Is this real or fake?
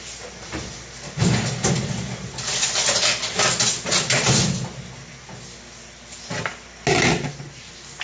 real